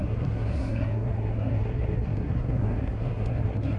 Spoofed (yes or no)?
yes